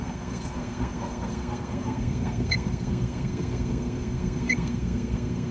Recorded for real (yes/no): no